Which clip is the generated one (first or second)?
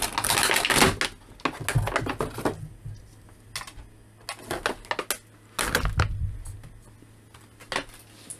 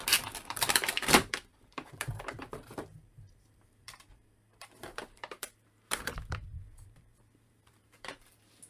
second